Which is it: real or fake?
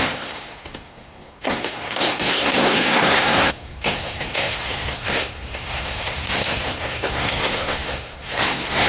fake